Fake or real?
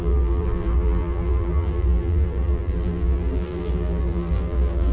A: fake